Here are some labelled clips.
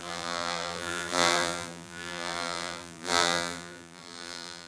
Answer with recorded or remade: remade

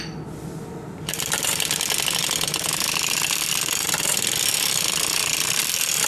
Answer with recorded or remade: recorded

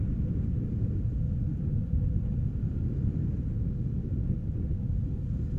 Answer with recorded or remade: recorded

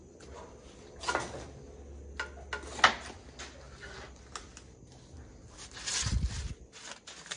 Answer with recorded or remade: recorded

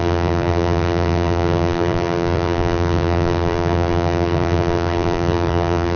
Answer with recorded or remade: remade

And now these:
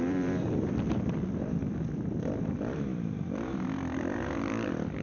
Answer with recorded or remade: remade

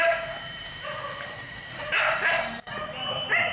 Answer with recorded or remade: remade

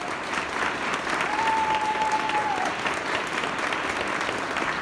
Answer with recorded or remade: recorded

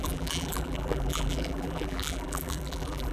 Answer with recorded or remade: remade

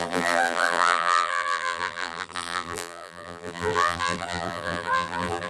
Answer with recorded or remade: remade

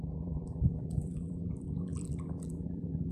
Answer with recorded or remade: remade